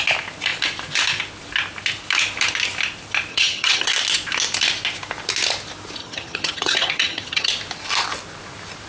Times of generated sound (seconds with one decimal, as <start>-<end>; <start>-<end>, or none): 3.3-3.9; 6.0-7.5